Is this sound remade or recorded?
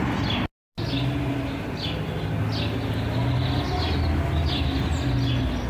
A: recorded